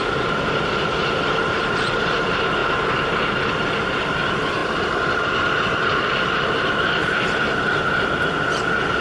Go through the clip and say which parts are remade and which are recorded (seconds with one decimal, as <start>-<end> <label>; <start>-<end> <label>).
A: 0.0-9.0 recorded